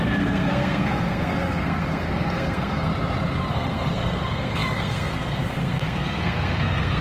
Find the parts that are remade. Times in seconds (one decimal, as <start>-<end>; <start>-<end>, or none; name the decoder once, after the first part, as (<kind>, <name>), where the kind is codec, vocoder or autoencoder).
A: 0.0-2.9 (codec, SNAC); 3.5-7.0